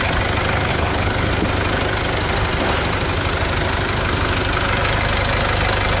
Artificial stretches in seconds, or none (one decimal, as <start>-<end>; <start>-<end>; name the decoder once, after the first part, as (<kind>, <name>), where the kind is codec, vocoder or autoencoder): 0.7-1.3 (codec, HILCodec)